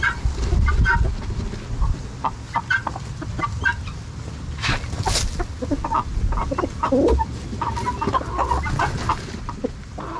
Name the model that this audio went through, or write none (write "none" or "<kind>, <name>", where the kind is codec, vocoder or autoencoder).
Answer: none